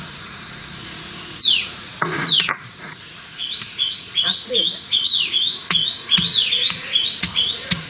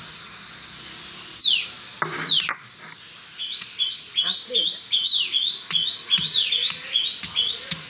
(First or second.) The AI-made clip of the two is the first